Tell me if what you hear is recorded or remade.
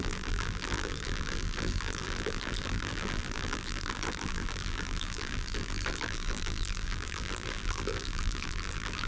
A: remade